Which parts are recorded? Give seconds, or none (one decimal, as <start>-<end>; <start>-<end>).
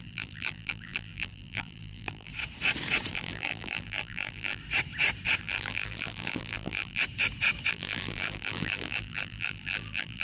2.3-3.1; 4.6-5.4; 7.0-7.7